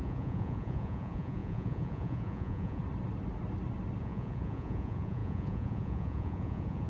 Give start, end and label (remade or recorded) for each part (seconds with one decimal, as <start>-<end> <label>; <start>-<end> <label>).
0.0-2.8 remade; 2.8-4.0 recorded; 4.0-6.9 remade